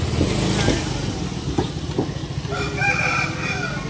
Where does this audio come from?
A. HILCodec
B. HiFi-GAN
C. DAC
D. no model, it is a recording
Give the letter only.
D